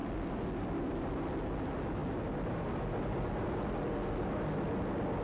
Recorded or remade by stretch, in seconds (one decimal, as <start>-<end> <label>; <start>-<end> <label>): 0.0-0.7 remade; 0.7-5.2 recorded